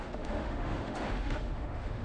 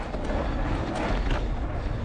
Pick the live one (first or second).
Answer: second